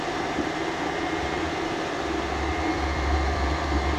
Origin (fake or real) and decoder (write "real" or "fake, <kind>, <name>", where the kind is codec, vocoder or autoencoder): fake, vocoder, BigVGAN v2